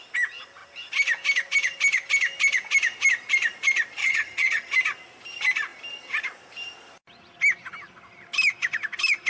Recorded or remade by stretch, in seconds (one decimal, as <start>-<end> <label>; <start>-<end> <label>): 0.0-4.0 recorded; 4.0-4.7 remade; 4.7-9.3 recorded